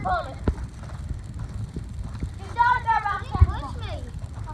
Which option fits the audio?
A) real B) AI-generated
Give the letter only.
A